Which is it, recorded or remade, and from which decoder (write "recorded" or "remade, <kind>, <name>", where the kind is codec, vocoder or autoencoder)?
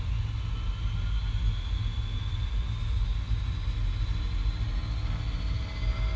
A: recorded